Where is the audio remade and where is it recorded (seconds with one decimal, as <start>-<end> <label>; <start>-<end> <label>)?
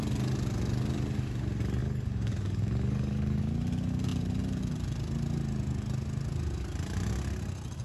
0.0-1.8 recorded; 1.8-3.4 remade; 3.4-7.8 recorded